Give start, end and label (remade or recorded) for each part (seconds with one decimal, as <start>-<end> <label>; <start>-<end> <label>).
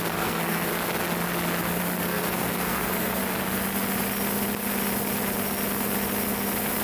0.0-0.7 remade; 0.7-2.0 recorded; 2.0-3.2 remade; 3.2-6.8 recorded